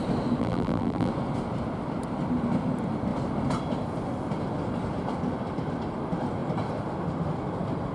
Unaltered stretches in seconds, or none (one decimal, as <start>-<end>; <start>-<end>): 0.0-0.4; 1.1-7.9